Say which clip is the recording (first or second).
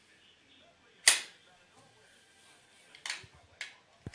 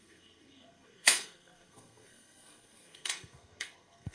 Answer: first